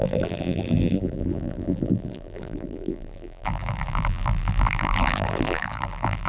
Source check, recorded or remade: remade